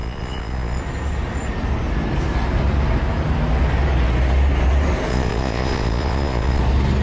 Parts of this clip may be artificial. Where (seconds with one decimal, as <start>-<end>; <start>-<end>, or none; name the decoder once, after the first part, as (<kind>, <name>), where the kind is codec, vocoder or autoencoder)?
0.0-0.8 (vocoder, Vocos); 5.1-6.6